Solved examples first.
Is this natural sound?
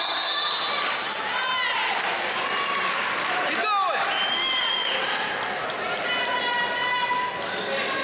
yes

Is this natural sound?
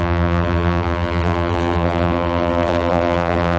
no